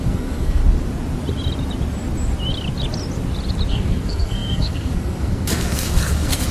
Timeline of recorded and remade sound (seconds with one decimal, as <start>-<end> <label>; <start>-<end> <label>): 0.0-0.6 remade; 0.6-3.7 recorded; 3.7-6.5 remade